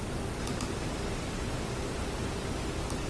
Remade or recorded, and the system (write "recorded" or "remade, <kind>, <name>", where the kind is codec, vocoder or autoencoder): recorded